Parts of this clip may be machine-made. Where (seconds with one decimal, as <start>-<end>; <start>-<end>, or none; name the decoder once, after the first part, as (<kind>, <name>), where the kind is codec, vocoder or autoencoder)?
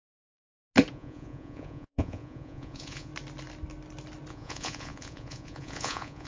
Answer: 0.0-0.4 (vocoder, Vocos); 0.9-3.1; 4.3-6.3